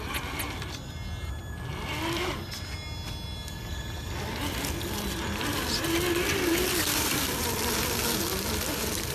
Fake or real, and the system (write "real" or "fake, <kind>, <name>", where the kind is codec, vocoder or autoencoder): real